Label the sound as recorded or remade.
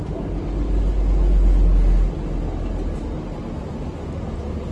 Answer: recorded